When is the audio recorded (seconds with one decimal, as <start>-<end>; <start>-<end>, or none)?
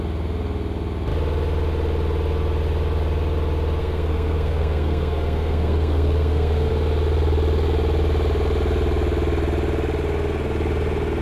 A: 0.0-3.8; 6.7-11.2